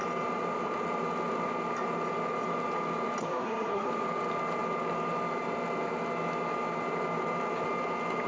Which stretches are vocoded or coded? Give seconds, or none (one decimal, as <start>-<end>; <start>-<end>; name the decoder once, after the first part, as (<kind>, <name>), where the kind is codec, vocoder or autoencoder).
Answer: 3.2-3.9 (codec, SNAC)